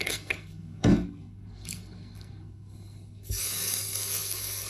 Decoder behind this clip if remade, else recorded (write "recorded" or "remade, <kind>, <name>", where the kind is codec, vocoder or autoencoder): remade, codec, SNAC